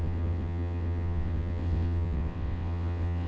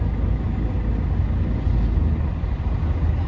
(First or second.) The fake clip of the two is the first